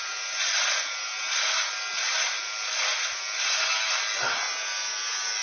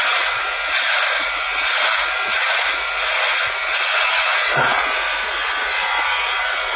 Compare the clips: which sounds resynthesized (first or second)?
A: second